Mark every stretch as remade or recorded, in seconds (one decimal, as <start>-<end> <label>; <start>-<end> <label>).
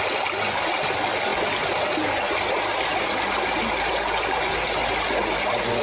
0.0-5.8 recorded